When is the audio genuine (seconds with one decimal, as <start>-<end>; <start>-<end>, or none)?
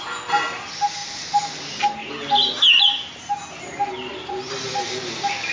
0.0-5.5